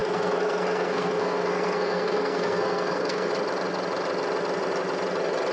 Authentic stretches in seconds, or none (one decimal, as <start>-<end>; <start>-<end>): 3.3-5.5